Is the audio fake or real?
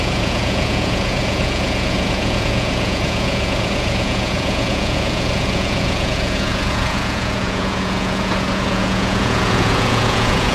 fake